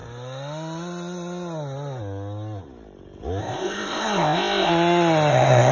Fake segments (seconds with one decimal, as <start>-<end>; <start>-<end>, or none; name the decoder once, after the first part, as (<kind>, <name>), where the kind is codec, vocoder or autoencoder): 3.4-4.7 (codec, ZipCodec); 5.3-5.7